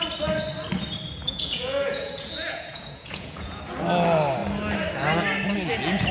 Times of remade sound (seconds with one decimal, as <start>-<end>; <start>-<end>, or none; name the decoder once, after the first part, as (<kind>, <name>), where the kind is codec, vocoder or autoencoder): 1.2-3.6 (vocoder, Vocos)